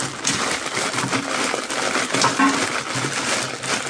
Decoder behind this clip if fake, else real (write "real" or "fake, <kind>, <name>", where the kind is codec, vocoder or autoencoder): fake, vocoder, BigVGAN v2